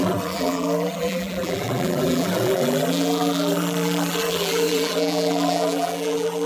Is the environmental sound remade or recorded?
remade